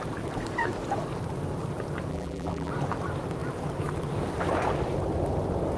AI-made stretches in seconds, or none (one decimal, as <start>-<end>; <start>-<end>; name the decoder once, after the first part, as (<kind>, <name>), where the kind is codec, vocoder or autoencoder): 2.1-2.7 (vocoder, BigVGAN v2)